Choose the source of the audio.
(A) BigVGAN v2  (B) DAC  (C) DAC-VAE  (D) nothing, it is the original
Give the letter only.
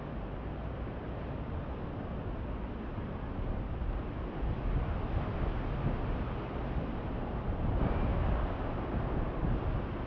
D